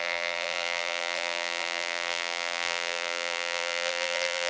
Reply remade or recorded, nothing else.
remade